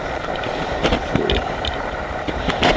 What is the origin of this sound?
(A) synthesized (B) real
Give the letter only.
B